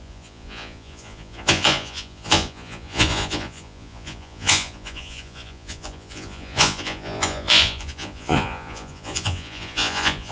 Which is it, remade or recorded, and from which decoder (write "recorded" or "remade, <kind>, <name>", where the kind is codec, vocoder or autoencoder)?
remade, vocoder, Vocos